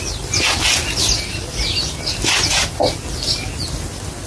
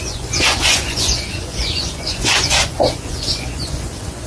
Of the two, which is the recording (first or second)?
first